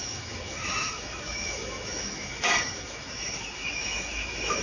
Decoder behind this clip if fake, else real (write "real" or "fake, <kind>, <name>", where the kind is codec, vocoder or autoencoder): fake, autoencoder, DAC-VAE